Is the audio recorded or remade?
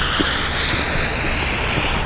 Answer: recorded